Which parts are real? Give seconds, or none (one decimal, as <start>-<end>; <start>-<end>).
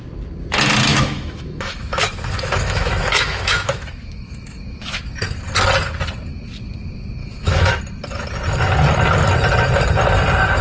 0.0-0.9; 5.0-7.2; 7.8-10.6